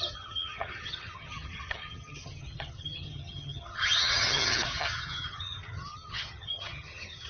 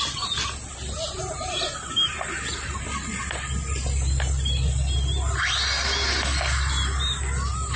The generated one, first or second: first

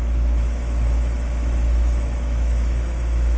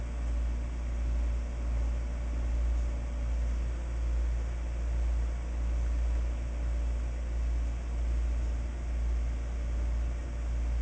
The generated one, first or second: first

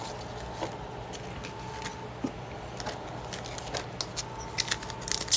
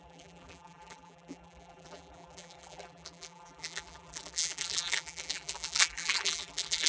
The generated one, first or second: second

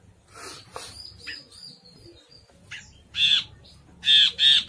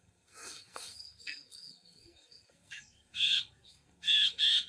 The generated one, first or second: second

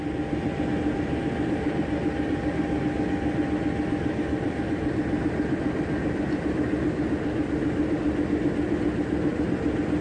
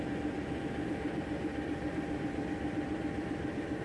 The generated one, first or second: second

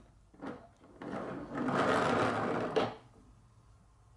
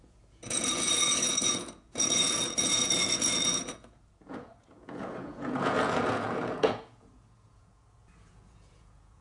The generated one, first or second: second